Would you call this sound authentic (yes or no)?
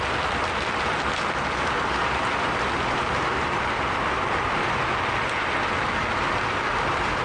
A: yes